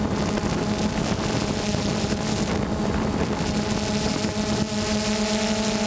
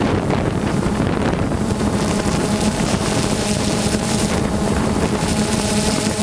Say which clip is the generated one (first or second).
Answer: second